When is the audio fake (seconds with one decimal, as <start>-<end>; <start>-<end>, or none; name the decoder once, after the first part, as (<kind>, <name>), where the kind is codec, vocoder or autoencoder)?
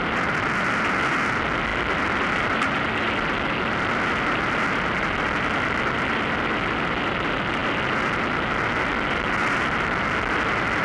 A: none